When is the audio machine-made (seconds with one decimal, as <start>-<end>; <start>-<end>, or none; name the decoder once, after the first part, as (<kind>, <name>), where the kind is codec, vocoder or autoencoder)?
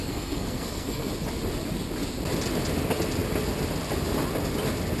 0.0-1.1 (codec, SNAC)